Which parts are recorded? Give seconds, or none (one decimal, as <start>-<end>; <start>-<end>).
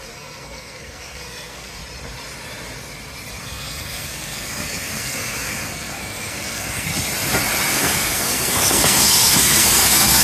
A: 1.8-3.4; 6.9-7.7